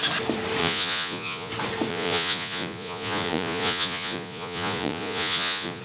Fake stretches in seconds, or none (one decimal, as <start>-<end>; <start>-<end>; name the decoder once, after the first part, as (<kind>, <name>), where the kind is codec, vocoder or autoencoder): 0.6-1.5 (vocoder, Vocos); 1.9-5.8